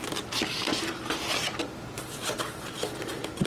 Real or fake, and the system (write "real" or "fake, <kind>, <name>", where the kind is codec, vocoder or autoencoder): real